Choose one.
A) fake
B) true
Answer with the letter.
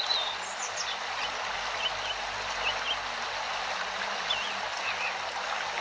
B